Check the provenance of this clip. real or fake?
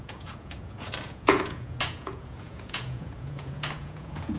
fake